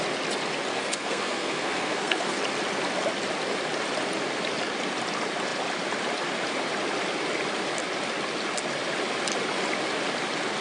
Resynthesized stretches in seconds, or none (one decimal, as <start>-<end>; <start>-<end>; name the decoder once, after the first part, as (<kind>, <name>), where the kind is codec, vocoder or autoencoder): 0.7-2.4 (codec, SNAC)